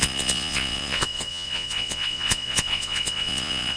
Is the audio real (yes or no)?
no